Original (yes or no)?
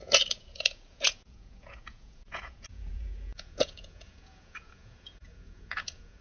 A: no